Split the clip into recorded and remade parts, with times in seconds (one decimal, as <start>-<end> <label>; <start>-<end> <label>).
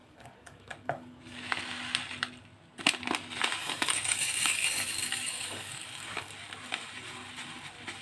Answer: 0.0-1.2 remade; 1.2-3.6 recorded; 3.6-6.3 remade; 6.3-8.0 recorded